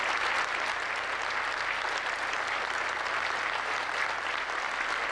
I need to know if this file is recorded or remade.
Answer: recorded